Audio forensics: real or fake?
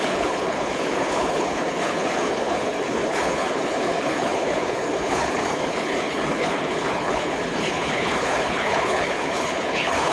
fake